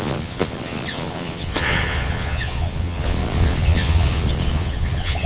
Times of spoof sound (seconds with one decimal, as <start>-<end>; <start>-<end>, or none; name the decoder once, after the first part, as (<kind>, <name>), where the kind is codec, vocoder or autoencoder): 0.0-5.3 (vocoder, Vocos)

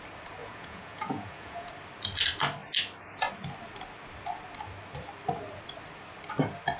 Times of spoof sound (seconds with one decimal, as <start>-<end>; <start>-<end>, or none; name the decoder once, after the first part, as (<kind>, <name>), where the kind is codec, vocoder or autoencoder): 0.4-1.7 (vocoder, Vocos)

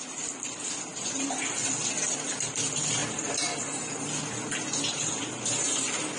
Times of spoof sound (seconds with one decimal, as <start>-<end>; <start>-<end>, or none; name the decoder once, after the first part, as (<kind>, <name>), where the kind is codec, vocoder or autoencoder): none

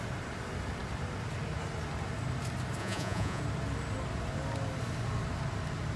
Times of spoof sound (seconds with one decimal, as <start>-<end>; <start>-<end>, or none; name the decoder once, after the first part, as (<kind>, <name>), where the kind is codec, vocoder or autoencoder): 2.8-3.4 (vocoder, Vocos)